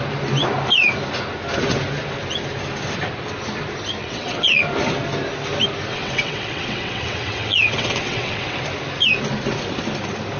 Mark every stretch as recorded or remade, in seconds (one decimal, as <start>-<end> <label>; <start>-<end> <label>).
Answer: 0.0-4.0 recorded; 4.0-4.6 remade; 4.6-5.9 recorded; 5.9-8.6 remade; 8.6-10.4 recorded